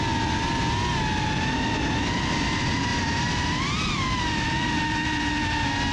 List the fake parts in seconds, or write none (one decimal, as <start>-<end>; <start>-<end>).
2.9-4.1